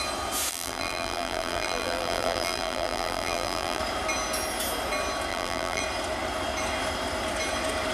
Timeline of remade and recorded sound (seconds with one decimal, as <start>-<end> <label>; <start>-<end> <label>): 0.0-0.5 recorded; 0.5-3.8 remade; 3.8-5.3 recorded; 5.3-5.8 remade; 5.8-7.9 recorded